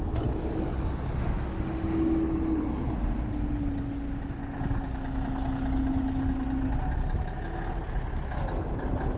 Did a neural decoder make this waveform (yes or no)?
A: no